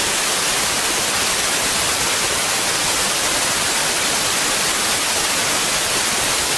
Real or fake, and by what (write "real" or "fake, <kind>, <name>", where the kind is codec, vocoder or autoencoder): real